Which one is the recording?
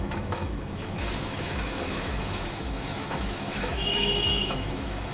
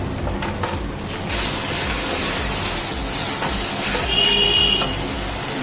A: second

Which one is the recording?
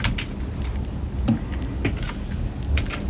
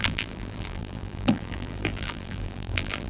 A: first